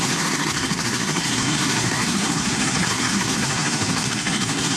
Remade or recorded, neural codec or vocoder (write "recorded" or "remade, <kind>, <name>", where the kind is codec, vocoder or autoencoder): remade, codec, SNAC